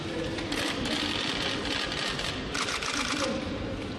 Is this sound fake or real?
real